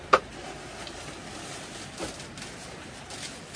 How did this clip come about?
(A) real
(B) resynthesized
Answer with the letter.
A